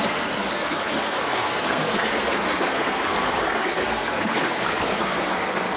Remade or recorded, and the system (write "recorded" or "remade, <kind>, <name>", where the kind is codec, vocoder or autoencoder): remade, codec, SNAC